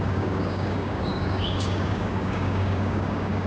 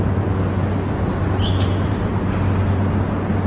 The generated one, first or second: first